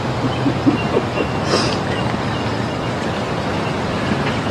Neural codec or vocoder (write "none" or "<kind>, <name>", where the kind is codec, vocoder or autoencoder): none